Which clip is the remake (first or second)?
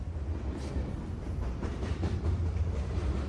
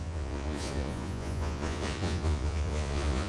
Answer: second